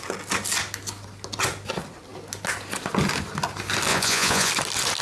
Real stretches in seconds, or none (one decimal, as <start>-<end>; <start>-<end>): 0.0-3.9; 4.5-5.0